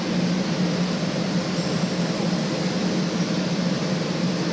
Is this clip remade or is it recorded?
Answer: recorded